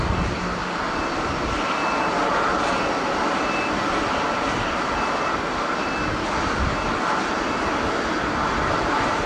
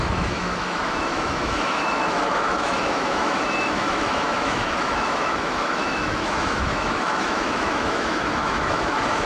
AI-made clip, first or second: second